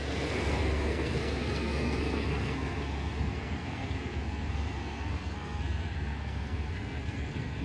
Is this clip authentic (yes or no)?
no